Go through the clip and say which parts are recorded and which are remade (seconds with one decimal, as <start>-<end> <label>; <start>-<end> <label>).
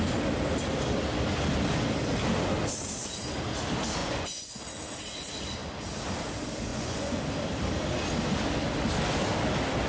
0.0-4.0 recorded; 4.0-4.6 remade; 4.6-6.7 recorded; 6.7-7.2 remade; 7.2-9.9 recorded